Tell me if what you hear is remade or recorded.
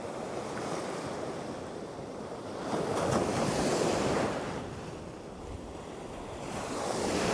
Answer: remade